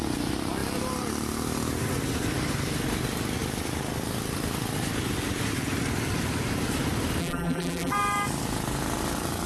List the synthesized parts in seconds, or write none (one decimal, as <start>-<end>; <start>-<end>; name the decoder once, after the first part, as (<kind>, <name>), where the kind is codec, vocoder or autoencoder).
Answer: 7.2-7.9 (vocoder, BigVGAN v2)